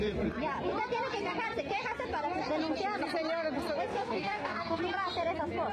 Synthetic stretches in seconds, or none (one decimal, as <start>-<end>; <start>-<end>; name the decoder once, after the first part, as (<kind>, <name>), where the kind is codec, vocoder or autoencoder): 3.9-4.8 (codec, DAC)